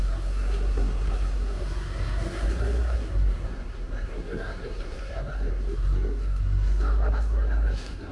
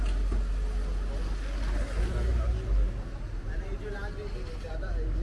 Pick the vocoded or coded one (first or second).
first